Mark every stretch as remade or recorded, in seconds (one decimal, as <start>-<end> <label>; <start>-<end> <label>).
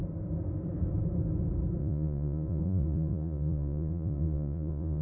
0.0-1.8 recorded; 1.8-5.0 remade